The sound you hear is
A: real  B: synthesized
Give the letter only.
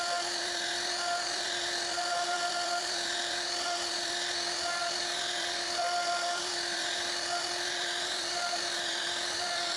B